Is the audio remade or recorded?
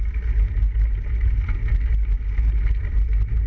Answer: recorded